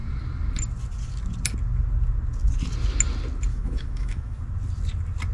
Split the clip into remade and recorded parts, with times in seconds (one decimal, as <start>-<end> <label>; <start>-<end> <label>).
0.0-3.5 recorded; 3.5-4.4 remade; 4.4-5.3 recorded